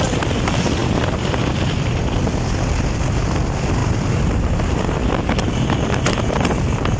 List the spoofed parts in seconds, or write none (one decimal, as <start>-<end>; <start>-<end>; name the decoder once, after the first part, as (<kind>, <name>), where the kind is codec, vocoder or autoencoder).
0.0-7.0 (vocoder, BigVGAN v2)